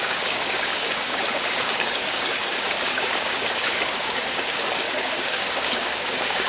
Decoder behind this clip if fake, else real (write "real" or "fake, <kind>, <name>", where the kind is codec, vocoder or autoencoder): fake, codec, DAC